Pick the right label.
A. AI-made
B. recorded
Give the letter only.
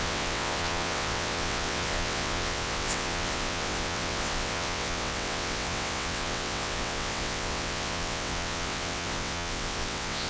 A